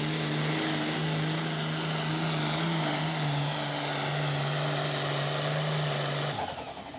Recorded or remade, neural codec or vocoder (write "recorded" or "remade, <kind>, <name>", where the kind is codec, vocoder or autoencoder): recorded